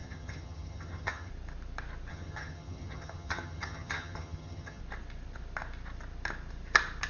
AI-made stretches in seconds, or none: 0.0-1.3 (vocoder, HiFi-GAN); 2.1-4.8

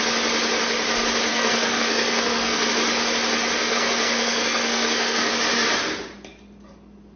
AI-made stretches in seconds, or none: 1.3-2.7 (codec, SNAC); 3.6-5.3

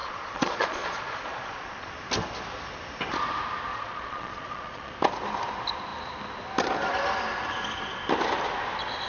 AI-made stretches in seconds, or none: 0.0-1.9 (vocoder, Vocos); 3.7-4.9